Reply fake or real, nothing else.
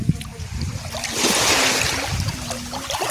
real